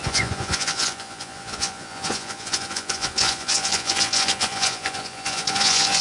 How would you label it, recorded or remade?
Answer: remade